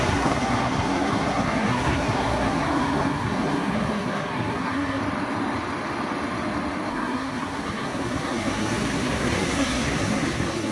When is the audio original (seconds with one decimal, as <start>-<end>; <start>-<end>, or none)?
5.0-6.9